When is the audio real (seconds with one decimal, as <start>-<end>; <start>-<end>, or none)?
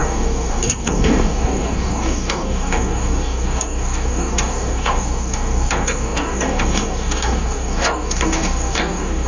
none